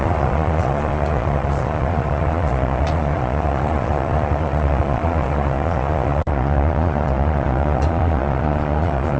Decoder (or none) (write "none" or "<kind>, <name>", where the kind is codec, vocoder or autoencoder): vocoder, Vocos